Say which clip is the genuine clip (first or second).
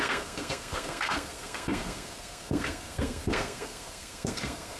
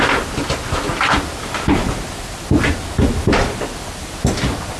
second